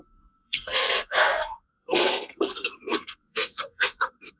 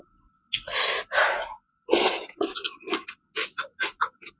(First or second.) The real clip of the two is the second